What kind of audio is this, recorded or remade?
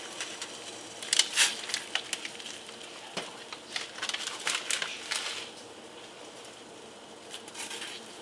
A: recorded